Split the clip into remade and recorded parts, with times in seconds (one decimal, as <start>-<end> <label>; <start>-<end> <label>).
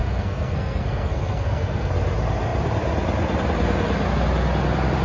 0.0-1.9 remade; 1.9-5.0 recorded